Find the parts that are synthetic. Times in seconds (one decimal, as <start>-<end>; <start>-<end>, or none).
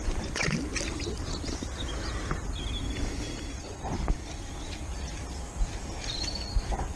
0.0-0.7; 3.0-7.0